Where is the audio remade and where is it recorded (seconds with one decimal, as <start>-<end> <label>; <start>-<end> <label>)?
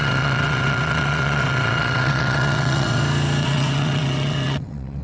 0.0-3.0 remade; 3.0-3.4 recorded; 3.4-5.0 remade